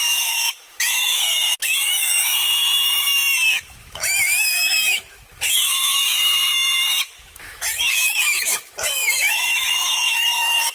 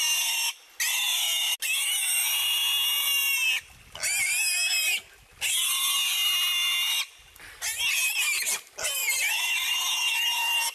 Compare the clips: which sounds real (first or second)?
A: second